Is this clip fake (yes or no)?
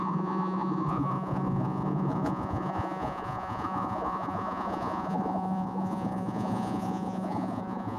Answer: yes